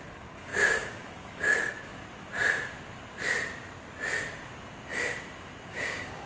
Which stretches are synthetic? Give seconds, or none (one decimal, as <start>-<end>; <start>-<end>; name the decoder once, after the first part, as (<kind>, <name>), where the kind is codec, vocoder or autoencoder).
0.0-1.9 (codec, DAC); 5.7-6.3